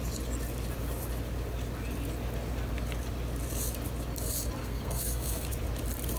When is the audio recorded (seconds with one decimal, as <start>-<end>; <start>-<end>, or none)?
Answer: 0.0-4.6; 5.5-6.2